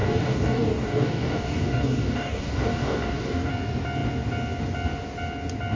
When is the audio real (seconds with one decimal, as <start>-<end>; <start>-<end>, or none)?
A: 3.5-5.8